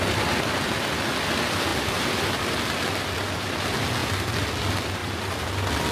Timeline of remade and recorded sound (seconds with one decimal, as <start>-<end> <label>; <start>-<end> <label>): 0.0-5.9 recorded